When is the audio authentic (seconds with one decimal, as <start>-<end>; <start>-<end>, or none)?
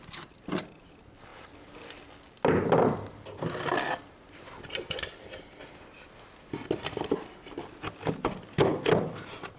0.0-9.6